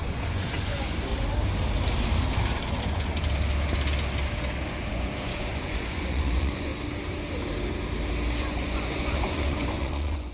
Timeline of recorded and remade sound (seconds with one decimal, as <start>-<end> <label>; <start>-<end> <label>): 0.0-1.1 remade; 1.1-2.8 recorded; 2.8-3.2 remade; 3.2-4.8 recorded; 4.8-6.7 remade; 6.7-8.4 recorded; 8.4-10.3 remade